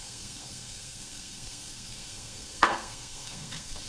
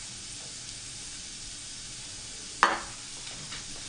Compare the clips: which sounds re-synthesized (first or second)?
first